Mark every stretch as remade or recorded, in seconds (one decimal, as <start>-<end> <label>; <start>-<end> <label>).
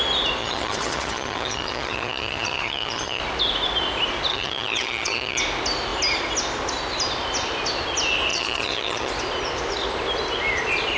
0.0-0.4 recorded; 0.4-3.2 remade; 3.2-4.3 recorded; 4.3-5.4 remade; 5.4-8.3 recorded; 8.3-9.1 remade; 9.1-11.0 recorded